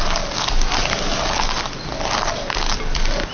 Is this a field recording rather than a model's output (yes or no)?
yes